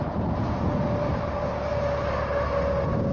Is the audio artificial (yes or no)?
no